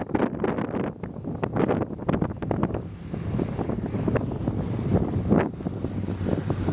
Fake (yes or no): no